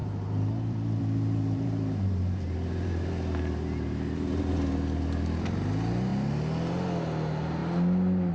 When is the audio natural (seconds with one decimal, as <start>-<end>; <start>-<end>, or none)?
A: 3.1-8.3